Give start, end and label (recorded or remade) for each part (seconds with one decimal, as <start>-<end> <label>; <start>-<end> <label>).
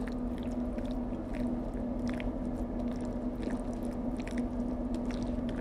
0.0-5.6 recorded